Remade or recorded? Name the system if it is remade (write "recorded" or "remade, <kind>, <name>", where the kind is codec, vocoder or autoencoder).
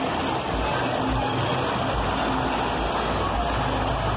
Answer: recorded